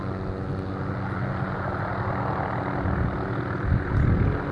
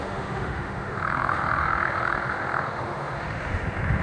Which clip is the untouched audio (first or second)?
first